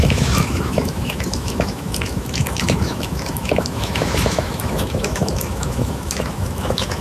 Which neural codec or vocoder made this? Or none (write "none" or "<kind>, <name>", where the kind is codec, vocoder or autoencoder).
autoencoder, DAC-VAE